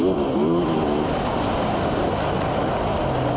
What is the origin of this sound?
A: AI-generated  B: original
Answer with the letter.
B